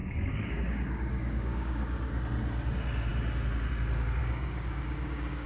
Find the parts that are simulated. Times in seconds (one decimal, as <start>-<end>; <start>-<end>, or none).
0.0-2.2; 4.2-5.5